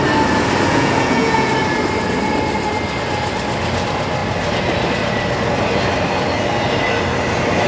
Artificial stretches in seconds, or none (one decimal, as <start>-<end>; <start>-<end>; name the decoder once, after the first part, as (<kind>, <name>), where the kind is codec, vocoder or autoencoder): 0.7-1.5 (vocoder, Vocos)